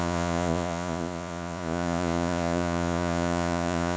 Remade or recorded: remade